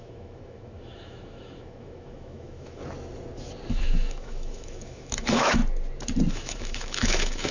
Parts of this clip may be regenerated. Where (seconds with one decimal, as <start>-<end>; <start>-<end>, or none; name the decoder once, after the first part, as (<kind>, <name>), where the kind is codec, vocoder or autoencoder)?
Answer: 0.0-2.8 (autoencoder, DAC-VAE); 3.7-5.6; 6.3-7.5

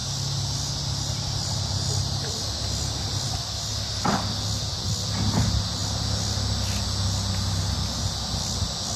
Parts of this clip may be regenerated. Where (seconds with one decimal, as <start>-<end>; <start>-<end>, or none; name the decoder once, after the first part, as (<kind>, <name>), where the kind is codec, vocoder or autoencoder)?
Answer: none